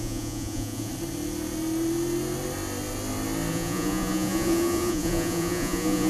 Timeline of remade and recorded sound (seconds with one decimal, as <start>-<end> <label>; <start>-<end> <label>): 0.0-0.9 remade; 0.9-3.5 recorded; 3.5-6.1 remade